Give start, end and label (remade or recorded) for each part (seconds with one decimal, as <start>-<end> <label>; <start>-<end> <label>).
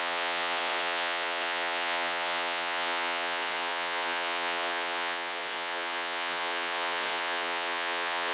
0.0-8.3 remade